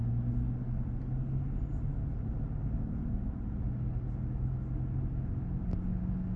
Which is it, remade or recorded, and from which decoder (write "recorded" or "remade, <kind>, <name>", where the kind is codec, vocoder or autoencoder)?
recorded